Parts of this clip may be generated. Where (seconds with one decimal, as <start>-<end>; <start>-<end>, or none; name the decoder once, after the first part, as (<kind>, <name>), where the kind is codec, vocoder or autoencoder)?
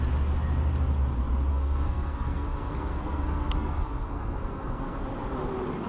1.5-5.0 (codec, SNAC)